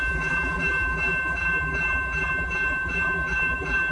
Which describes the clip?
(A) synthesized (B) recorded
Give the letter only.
A